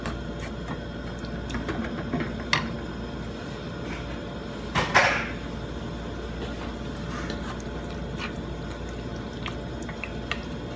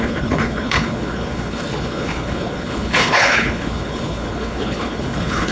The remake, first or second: second